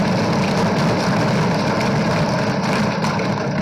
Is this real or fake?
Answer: real